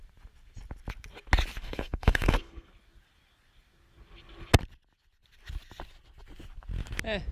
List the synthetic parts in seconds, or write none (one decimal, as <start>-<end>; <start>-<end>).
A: 1.6-2.7